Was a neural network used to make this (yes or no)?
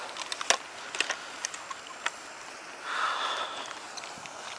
no